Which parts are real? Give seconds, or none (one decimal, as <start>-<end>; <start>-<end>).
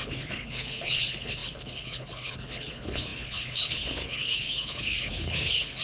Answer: none